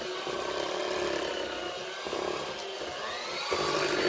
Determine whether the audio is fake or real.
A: real